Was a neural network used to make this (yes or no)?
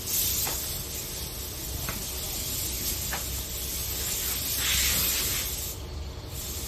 no